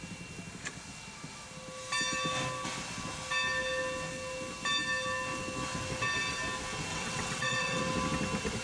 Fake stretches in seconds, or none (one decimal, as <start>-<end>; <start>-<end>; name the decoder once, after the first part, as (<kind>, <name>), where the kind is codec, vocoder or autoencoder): 6.9-7.8 (vocoder, WaveNeXt)